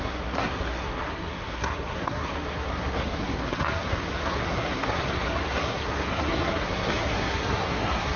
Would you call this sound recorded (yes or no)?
no